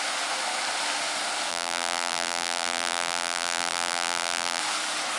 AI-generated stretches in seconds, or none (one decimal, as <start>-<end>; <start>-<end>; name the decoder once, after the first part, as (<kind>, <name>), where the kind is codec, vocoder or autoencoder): 1.5-4.6 (vocoder, BigVGAN v2)